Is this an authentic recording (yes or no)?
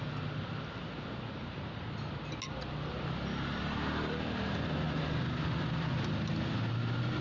yes